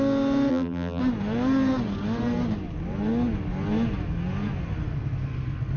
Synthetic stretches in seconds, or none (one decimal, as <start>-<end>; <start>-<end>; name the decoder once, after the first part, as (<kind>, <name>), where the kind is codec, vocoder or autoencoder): 0.5-1.0 (vocoder, BigVGAN v2)